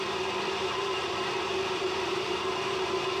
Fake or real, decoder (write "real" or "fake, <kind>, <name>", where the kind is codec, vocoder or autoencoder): fake, vocoder, BigVGAN v2